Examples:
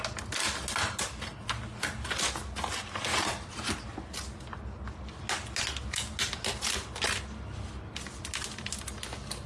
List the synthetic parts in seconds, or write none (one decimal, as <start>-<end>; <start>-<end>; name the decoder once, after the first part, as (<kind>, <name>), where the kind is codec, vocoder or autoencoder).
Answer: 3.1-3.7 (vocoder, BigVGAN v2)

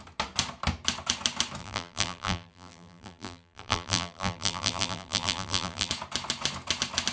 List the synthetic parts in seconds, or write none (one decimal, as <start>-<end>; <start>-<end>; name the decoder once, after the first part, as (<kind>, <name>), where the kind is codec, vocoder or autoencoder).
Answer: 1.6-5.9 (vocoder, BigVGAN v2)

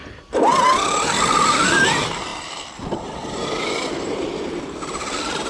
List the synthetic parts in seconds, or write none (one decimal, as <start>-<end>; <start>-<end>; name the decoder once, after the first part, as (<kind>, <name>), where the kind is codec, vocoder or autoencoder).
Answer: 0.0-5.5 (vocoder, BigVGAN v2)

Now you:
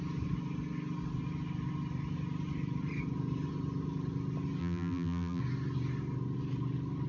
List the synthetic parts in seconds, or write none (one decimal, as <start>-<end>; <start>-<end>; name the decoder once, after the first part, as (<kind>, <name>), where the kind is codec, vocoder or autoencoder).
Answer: 4.6-5.4 (vocoder, BigVGAN v2)

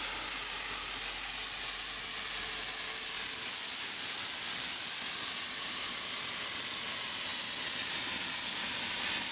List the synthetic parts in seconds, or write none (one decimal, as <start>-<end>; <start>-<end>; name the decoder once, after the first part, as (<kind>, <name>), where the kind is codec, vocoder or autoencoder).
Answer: none